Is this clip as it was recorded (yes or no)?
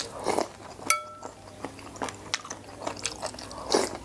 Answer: yes